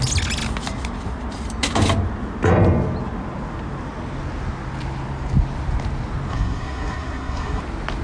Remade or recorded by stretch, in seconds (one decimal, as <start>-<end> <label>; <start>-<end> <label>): 0.0-6.3 recorded; 6.3-7.6 remade; 7.6-8.0 recorded